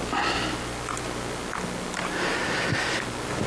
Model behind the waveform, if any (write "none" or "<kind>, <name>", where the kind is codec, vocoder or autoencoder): none